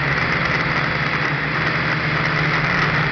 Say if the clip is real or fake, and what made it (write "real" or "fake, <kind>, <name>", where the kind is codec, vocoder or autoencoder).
real